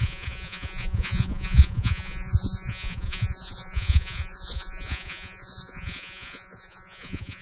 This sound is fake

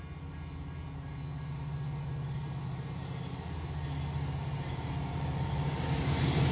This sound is real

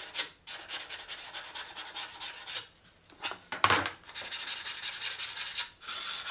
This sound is real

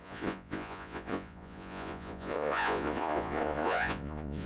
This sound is fake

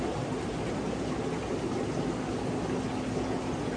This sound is real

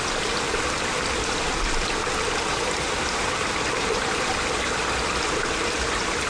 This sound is real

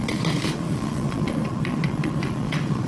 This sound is fake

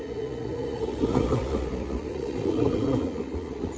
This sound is fake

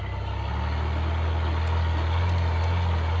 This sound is real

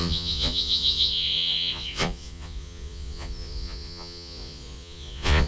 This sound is fake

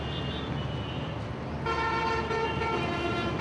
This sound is real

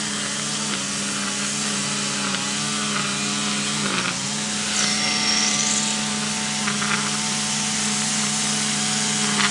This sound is real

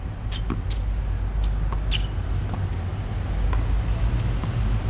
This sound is real